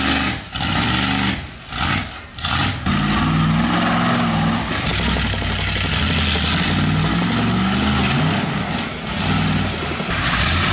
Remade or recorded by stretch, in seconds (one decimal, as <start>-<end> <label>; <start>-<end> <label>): 0.0-10.7 recorded